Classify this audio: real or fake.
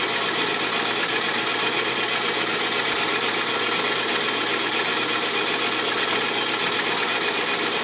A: real